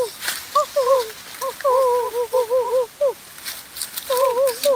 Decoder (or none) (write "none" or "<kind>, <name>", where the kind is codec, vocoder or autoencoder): none